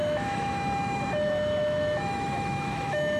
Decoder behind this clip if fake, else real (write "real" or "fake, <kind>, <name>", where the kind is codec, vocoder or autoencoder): fake, autoencoder, DAC-VAE